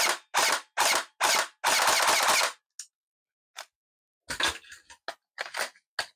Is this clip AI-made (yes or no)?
no